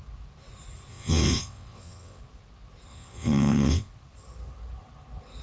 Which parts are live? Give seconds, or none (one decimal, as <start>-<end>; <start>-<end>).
0.0-0.9; 2.2-2.9; 3.9-5.4